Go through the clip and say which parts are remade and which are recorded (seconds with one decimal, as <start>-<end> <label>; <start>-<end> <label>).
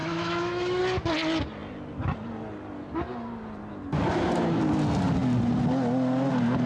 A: 0.0-0.8 remade; 0.8-6.7 recorded